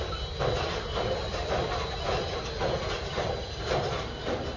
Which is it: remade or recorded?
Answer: remade